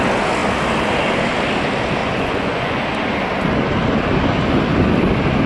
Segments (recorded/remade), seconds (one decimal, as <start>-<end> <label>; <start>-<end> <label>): 0.0-2.0 recorded; 2.0-2.8 remade; 2.8-5.5 recorded